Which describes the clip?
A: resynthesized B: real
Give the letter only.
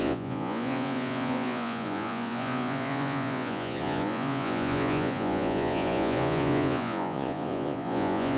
A